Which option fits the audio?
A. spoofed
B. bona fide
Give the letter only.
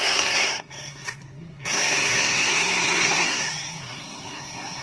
A